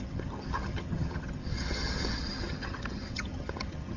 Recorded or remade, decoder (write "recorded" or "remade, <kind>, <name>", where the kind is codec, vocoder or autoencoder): remade, vocoder, HiFi-GAN